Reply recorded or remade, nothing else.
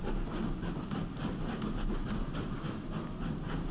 recorded